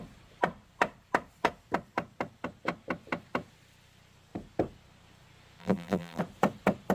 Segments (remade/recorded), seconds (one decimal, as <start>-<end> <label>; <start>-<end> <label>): 0.0-5.6 recorded; 5.6-6.2 remade; 6.2-6.9 recorded